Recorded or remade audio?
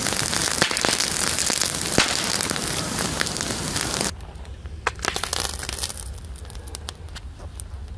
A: recorded